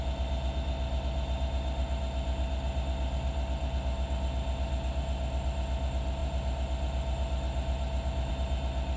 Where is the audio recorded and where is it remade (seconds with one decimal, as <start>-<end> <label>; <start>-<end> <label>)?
0.0-9.0 recorded